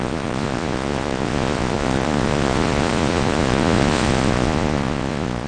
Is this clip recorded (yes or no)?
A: no